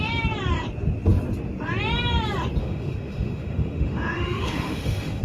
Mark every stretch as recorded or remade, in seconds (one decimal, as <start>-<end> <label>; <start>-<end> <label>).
0.0-2.6 recorded; 2.6-5.2 remade